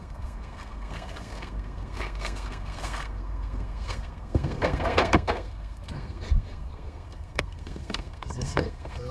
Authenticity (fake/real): fake